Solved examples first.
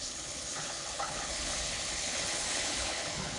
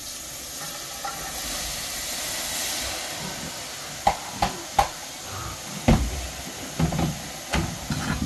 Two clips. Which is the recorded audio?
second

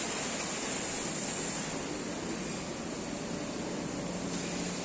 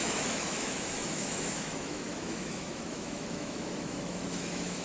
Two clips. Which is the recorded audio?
first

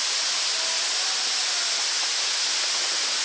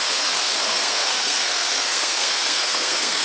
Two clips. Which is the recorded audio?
first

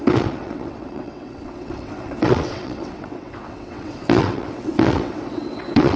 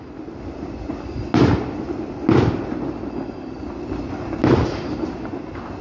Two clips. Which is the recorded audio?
second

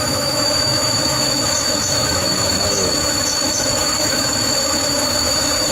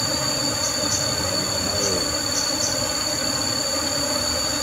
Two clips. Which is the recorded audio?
second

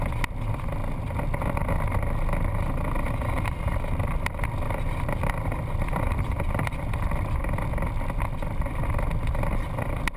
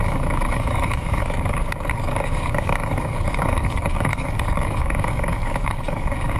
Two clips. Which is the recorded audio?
first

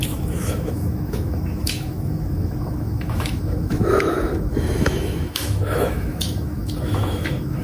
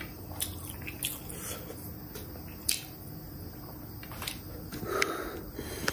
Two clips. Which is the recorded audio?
second